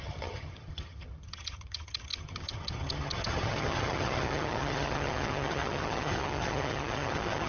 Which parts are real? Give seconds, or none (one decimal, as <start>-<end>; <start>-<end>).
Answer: none